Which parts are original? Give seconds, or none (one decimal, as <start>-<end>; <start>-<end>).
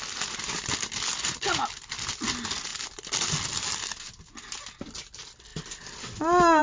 0.0-6.6